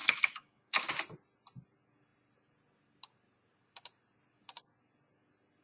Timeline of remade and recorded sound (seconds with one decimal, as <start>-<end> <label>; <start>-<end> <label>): 0.0-0.9 remade; 0.9-5.6 recorded